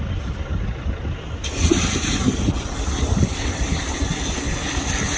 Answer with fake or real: real